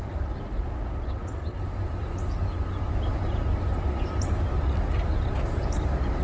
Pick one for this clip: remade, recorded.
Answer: recorded